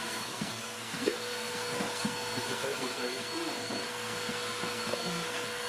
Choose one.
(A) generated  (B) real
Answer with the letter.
A